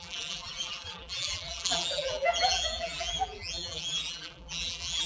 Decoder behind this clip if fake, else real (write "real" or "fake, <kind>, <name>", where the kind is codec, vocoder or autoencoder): fake, vocoder, BigVGAN v2